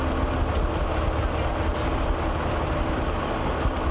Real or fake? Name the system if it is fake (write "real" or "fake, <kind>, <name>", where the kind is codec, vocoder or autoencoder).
real